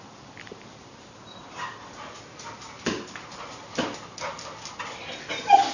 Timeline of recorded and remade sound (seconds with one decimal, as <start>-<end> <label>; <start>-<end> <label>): 0.0-5.7 recorded